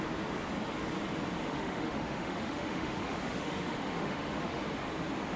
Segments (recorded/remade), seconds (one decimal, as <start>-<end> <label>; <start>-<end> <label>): 0.0-1.4 recorded; 1.4-4.6 remade; 4.6-5.4 recorded